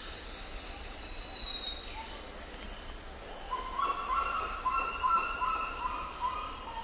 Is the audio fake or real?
real